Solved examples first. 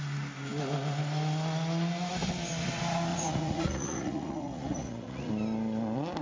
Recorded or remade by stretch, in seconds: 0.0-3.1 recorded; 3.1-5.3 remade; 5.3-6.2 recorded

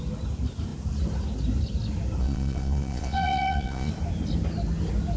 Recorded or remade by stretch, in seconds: 0.0-2.2 recorded; 2.2-3.9 remade; 3.9-5.2 recorded

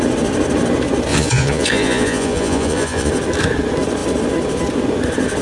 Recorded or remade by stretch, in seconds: 0.0-1.1 recorded; 1.1-3.1 remade; 3.1-5.4 recorded

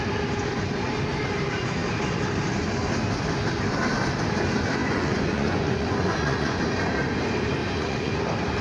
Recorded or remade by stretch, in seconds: 0.0-4.8 recorded; 4.8-6.6 remade; 6.6-7.6 recorded; 7.6-8.1 remade; 8.1-8.6 recorded

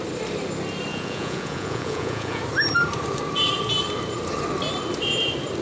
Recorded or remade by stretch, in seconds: 0.0-0.9 recorded; 0.9-2.4 remade; 2.4-5.6 recorded

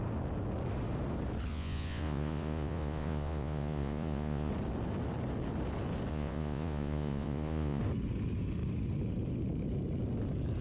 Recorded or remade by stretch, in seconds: 0.0-1.5 recorded; 1.5-4.5 remade; 4.5-6.1 recorded; 6.1-7.8 remade; 7.8-10.6 recorded